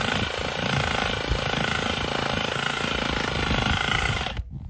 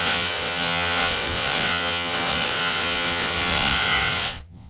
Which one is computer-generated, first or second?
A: second